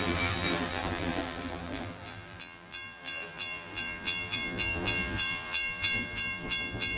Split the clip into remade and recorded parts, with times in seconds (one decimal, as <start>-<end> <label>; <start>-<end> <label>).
0.0-7.0 remade